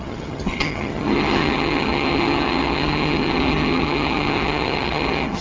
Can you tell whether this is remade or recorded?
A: remade